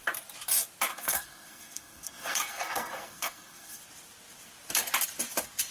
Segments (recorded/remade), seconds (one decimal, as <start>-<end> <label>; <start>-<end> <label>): 0.0-0.9 recorded; 0.9-3.8 remade; 3.8-5.7 recorded